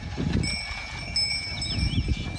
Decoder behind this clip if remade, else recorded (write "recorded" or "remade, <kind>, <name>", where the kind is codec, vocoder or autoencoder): recorded